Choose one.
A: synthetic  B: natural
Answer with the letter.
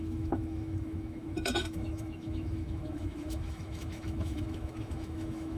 A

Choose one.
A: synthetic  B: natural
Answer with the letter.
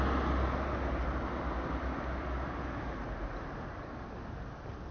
B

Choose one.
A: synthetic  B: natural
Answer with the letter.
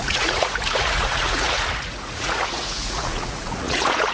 A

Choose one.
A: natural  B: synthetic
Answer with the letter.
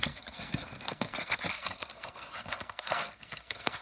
B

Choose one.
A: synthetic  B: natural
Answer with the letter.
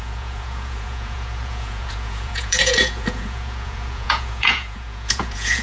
A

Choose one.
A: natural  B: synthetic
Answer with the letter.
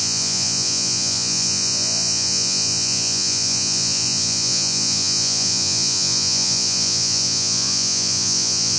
B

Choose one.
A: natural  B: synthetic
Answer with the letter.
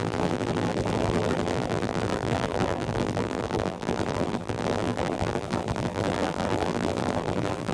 B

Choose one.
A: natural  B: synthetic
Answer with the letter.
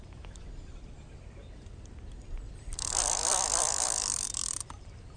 A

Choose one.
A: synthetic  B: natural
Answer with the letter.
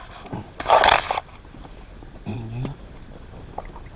B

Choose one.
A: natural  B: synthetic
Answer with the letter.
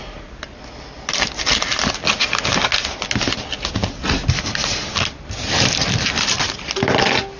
A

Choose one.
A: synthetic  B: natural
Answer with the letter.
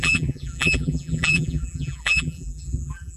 A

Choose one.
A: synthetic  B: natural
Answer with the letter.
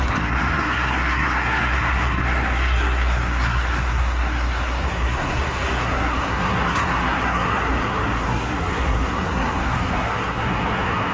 A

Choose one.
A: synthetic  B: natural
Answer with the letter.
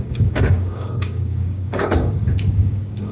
A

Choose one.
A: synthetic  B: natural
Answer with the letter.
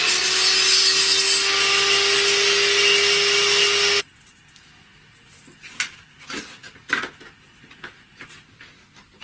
B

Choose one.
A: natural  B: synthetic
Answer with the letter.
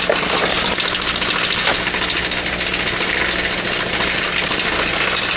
A